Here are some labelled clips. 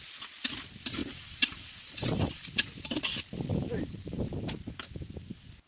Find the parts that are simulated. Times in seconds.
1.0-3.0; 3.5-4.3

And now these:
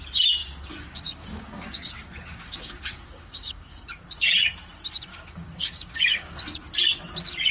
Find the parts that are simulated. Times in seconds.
0.4-3.9; 5.1-6.4